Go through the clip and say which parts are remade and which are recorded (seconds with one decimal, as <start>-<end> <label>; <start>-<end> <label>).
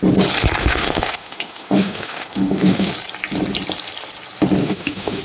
0.0-0.6 recorded; 0.6-2.9 remade; 2.9-4.6 recorded; 4.6-5.2 remade